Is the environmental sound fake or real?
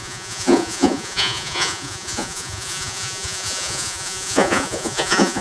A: fake